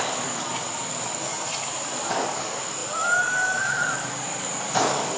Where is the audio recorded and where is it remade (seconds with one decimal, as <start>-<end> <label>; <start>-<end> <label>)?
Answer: 0.0-1.3 remade; 1.3-2.1 recorded; 2.1-5.2 remade